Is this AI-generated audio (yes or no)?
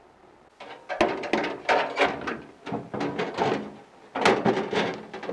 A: no